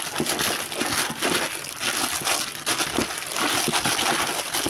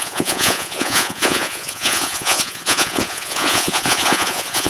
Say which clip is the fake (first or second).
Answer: second